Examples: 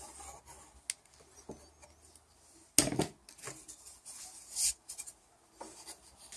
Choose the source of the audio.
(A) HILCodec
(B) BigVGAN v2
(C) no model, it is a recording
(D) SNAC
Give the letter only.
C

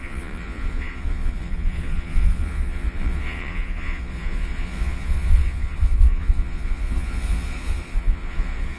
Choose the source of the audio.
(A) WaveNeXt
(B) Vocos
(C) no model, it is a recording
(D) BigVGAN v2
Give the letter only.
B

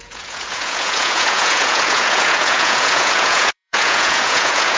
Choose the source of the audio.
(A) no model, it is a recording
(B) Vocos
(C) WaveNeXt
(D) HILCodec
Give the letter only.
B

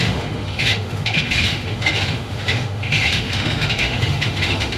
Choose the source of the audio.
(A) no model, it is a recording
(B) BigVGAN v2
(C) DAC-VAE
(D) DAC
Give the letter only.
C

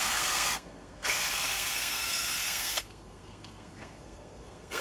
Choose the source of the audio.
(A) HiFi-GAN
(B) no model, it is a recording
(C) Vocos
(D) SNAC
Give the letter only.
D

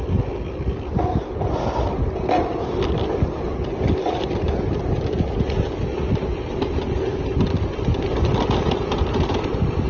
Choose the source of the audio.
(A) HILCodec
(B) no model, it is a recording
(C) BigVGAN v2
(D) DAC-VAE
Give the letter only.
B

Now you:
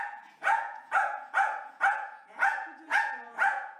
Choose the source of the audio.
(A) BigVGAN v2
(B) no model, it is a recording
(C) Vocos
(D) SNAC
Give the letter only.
C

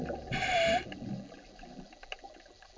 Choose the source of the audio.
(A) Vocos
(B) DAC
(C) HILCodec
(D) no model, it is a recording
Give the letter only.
D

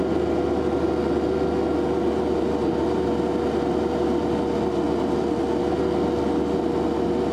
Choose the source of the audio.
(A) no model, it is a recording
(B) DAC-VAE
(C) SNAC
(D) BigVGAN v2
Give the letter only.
A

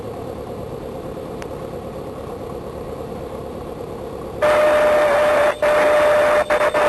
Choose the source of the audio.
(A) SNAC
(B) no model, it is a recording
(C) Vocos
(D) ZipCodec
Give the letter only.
B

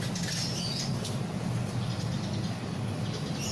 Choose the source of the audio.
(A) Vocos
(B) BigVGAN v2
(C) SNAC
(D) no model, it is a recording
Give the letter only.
D